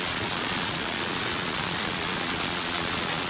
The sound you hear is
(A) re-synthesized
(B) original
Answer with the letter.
A